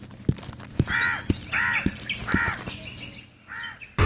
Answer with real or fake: real